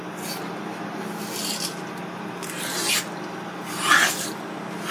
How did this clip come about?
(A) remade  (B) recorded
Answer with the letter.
B